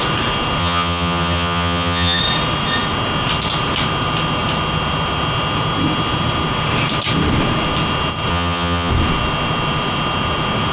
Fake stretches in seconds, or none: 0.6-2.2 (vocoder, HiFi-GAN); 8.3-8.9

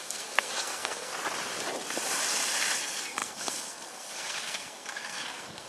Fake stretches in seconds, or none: 0.0-1.1 (codec, SNAC); 2.8-5.7

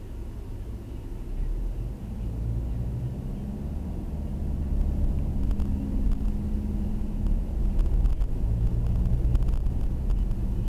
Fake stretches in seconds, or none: none

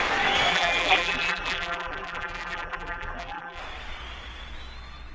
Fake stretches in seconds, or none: 0.5-3.6 (vocoder, BigVGAN v2)